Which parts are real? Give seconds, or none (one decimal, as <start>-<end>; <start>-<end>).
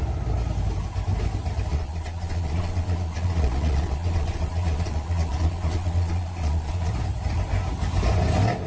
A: 0.0-1.7; 6.9-8.7